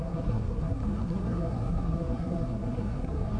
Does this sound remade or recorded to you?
remade